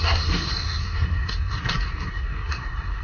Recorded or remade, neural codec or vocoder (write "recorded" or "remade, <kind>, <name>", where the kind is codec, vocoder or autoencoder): remade, codec, SNAC